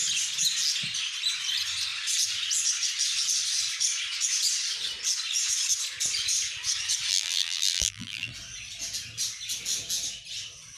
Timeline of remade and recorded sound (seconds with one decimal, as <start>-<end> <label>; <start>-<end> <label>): 0.0-7.1 recorded; 7.1-8.3 remade; 8.3-10.8 recorded